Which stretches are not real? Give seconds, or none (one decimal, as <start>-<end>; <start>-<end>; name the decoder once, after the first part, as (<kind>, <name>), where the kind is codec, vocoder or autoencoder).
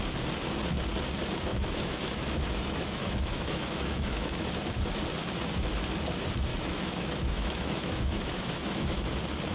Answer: 1.5-4.8 (autoencoder, DAC-VAE); 6.5-9.1